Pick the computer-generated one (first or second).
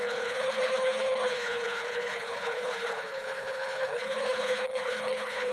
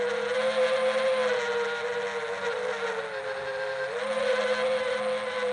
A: first